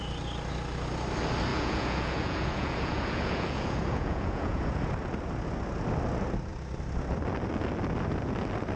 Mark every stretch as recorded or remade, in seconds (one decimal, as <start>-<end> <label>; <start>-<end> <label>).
0.0-1.5 recorded; 1.5-4.9 remade; 4.9-8.8 recorded